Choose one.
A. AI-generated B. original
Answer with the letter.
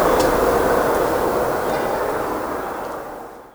B